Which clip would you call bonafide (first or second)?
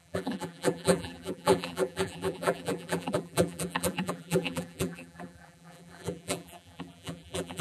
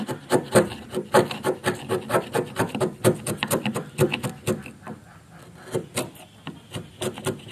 second